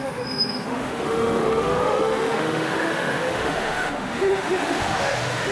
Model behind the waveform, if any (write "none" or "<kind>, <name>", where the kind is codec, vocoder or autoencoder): autoencoder, DAC-VAE